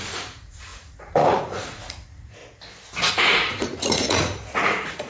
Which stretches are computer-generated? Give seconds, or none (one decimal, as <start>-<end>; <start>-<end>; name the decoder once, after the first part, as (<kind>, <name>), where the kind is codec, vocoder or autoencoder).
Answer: 0.0-2.4 (vocoder, Vocos); 3.1-5.1